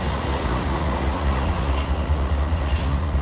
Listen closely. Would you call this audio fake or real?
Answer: fake